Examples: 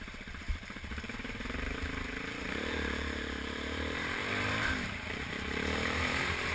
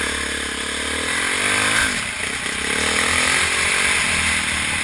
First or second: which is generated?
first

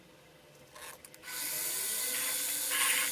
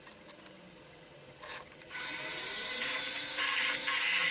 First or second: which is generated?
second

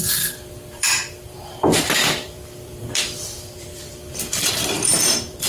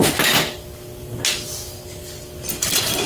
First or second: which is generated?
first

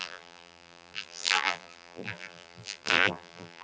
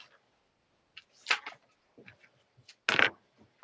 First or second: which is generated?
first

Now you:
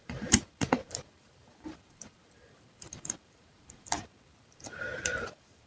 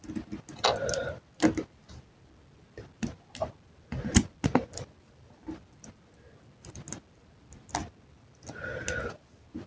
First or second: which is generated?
first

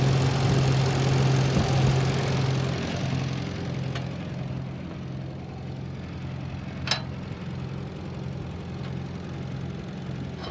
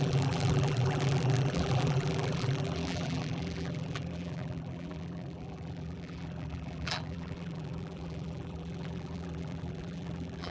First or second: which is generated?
second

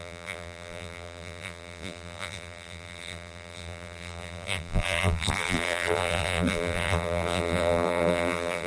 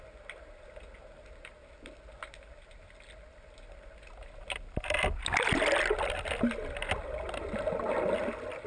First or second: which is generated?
first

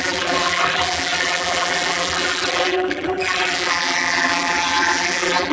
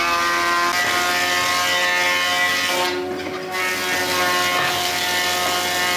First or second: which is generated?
first